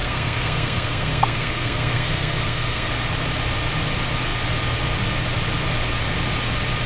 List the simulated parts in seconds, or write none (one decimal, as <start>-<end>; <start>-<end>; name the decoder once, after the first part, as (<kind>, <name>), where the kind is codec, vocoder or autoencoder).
0.0-2.9 (codec, SNAC)

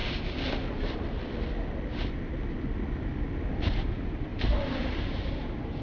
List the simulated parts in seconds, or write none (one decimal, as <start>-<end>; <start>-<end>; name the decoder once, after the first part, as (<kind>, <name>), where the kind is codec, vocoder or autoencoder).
3.5-5.8 (vocoder, BigVGAN v2)

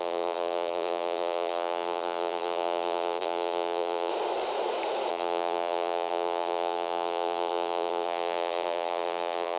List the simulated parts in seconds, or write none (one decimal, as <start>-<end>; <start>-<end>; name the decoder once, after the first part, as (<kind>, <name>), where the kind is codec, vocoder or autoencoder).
0.0-4.1 (vocoder, BigVGAN v2); 5.1-9.6

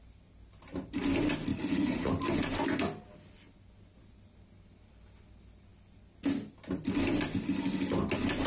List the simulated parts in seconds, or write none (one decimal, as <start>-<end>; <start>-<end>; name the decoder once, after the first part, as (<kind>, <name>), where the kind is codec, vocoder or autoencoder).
1.5-2.1 (vocoder, Vocos)

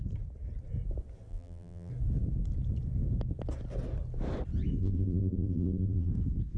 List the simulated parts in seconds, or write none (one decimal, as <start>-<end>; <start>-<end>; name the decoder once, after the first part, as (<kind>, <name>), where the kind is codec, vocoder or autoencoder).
1.3-1.9 (vocoder, BigVGAN v2); 4.8-6.1